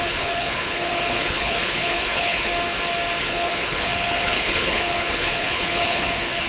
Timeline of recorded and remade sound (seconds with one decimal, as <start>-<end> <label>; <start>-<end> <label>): 0.0-2.5 remade; 2.5-3.2 recorded; 3.2-6.5 remade